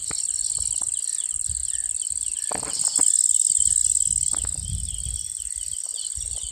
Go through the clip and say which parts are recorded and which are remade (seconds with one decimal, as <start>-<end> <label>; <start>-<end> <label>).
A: 0.0-6.5 recorded